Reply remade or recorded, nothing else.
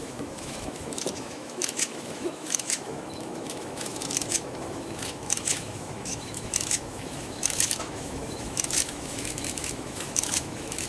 remade